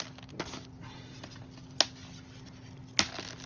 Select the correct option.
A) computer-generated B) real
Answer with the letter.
B